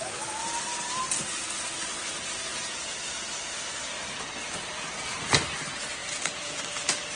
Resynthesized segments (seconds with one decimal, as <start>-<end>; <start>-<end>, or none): 6.0-6.6